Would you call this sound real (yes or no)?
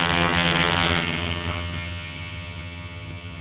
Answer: no